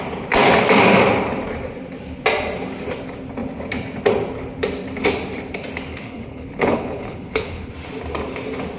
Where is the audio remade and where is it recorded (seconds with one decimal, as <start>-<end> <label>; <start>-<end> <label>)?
0.0-5.9 recorded; 5.9-7.7 remade; 7.7-8.8 recorded

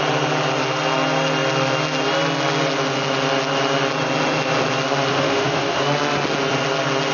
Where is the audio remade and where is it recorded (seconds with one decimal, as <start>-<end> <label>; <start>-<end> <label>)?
0.0-5.1 recorded; 5.1-5.8 remade; 5.8-7.1 recorded

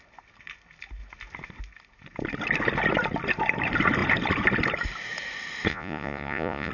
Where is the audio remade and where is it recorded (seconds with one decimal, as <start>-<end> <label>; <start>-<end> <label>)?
0.0-5.7 recorded; 5.7-6.7 remade

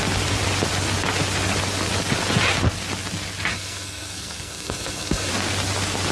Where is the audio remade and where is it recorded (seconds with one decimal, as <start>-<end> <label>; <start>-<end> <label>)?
0.0-3.5 recorded; 3.5-5.3 remade; 5.3-6.1 recorded

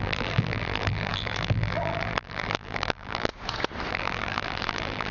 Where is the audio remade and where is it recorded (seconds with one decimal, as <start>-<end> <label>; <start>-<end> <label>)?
0.0-3.3 remade; 3.3-3.9 recorded; 3.9-5.1 remade

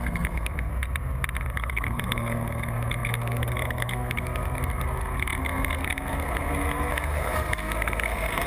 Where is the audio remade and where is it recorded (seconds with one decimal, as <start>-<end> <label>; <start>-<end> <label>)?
0.0-0.7 remade; 0.7-1.4 recorded; 1.4-8.5 remade